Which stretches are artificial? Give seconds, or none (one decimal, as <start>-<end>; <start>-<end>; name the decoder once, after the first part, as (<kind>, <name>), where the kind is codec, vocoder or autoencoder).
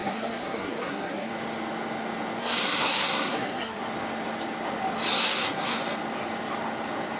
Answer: 0.0-1.3 (codec, SNAC); 2.4-3.8; 5.1-5.8